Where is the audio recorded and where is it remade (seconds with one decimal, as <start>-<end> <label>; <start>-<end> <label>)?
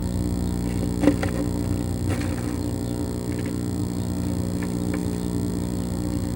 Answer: 0.0-6.4 recorded